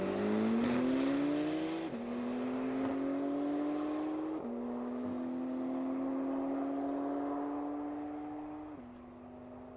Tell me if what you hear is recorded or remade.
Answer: recorded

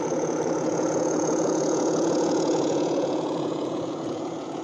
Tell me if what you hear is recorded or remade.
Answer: remade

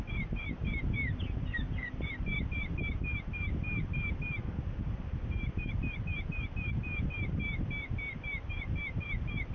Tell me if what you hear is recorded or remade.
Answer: recorded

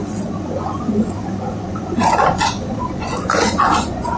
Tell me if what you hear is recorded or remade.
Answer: remade